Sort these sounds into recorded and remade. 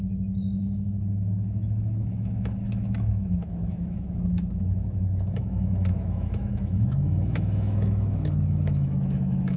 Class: remade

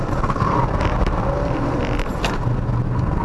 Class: recorded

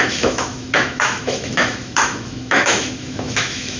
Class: remade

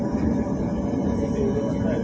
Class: recorded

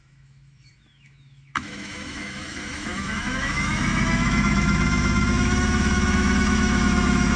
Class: remade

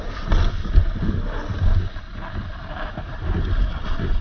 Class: recorded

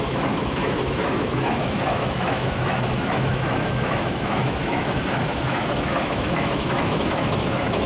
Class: remade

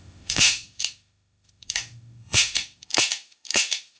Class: remade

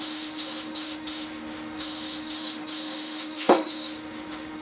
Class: remade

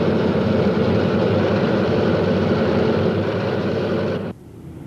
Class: recorded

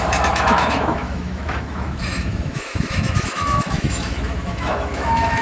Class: remade